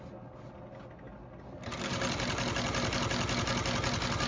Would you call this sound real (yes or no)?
yes